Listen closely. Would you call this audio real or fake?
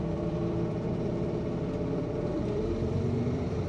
fake